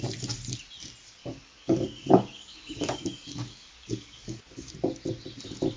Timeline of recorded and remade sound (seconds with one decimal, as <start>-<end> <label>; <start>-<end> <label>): 0.0-1.2 recorded; 1.2-4.7 remade; 4.7-5.8 recorded